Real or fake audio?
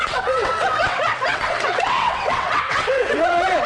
fake